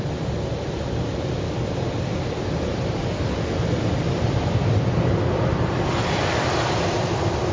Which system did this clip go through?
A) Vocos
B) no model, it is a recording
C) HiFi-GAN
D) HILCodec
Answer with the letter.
B